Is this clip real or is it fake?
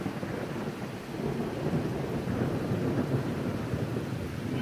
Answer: real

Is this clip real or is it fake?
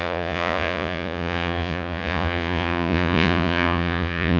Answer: fake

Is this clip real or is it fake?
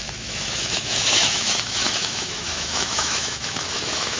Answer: fake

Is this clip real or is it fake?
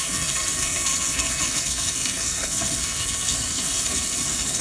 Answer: fake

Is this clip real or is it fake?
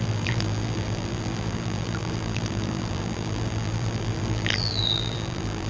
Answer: fake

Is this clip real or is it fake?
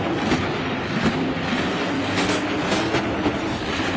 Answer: real